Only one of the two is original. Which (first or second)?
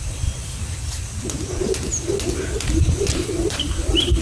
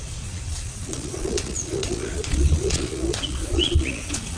first